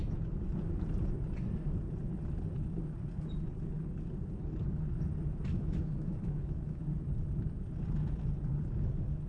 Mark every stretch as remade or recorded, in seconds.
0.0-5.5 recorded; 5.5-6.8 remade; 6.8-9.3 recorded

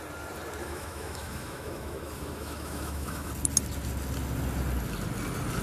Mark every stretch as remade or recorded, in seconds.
0.0-0.6 recorded; 0.6-3.3 remade; 3.3-5.6 recorded

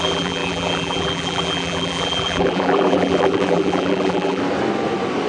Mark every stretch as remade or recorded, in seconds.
0.0-4.4 remade; 4.4-5.3 recorded

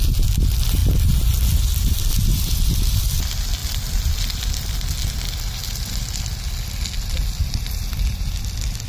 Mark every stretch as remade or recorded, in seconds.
0.0-8.9 recorded

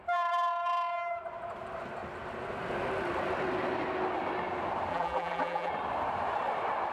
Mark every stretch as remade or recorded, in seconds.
0.0-4.9 recorded; 4.9-5.7 remade; 5.7-6.9 recorded

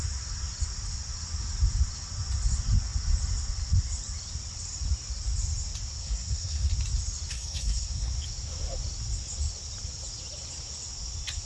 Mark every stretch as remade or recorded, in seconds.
0.0-6.0 recorded; 6.0-6.7 remade; 6.7-7.3 recorded; 7.3-8.1 remade; 8.1-11.5 recorded

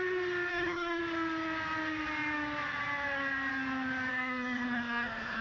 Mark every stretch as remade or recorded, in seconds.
0.0-0.5 recorded; 0.5-1.0 remade; 1.0-4.1 recorded; 4.1-5.4 remade

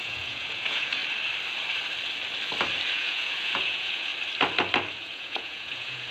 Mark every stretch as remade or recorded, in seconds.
0.0-1.0 remade; 1.0-2.9 recorded; 2.9-4.1 remade; 4.1-4.9 recorded; 4.9-6.1 remade